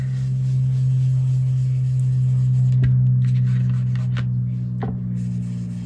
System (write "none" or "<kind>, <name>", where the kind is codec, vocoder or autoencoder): none